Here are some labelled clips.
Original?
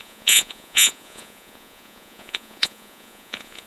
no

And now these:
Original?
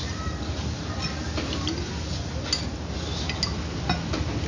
yes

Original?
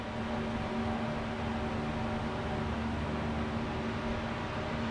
yes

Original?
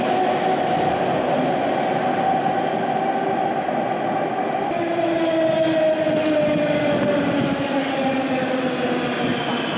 yes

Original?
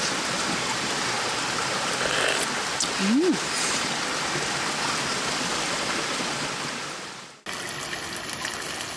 yes